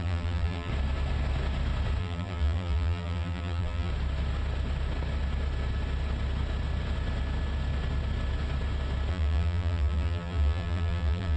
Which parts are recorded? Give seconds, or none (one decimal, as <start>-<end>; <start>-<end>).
0.7-2.0; 3.9-9.1